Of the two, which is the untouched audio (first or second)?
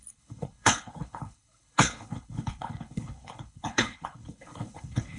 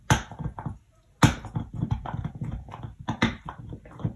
second